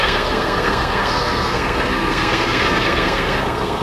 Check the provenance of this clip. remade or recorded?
remade